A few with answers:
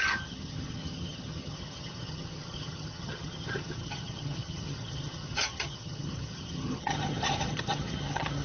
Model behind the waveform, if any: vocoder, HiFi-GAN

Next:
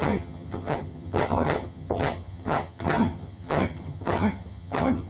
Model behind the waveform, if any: vocoder, HiFi-GAN